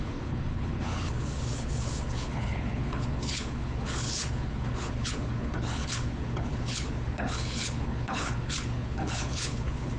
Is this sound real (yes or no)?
no